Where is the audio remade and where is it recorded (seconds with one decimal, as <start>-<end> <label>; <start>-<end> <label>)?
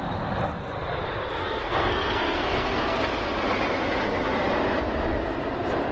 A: 0.0-1.4 recorded; 1.4-3.0 remade; 3.0-5.9 recorded